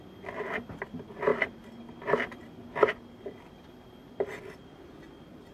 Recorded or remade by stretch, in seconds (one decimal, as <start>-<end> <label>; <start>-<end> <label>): 0.0-5.5 recorded